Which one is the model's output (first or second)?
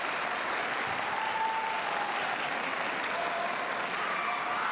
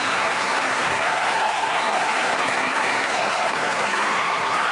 second